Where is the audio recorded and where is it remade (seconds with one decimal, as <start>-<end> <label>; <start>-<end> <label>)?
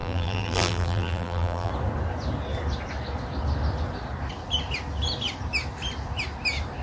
0.0-1.7 remade; 1.7-6.8 recorded